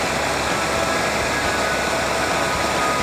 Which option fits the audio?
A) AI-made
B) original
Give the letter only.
B